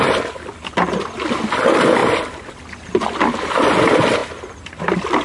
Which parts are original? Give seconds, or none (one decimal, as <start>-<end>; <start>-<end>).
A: 0.0-5.2